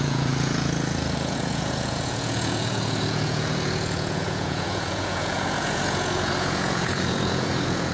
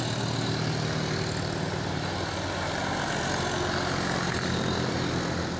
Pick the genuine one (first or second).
second